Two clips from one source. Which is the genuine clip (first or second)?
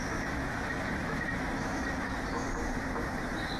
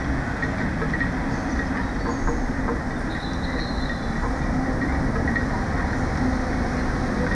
second